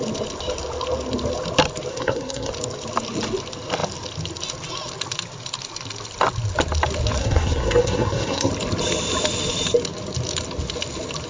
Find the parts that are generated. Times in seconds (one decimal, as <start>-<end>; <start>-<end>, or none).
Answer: 1.9-2.5; 7.2-8.5